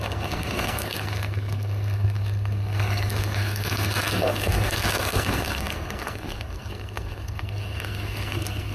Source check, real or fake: fake